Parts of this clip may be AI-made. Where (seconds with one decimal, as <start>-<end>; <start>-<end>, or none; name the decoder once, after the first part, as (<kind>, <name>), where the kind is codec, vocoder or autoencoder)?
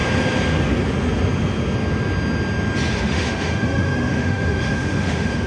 2.9-5.5 (autoencoder, DAC-VAE)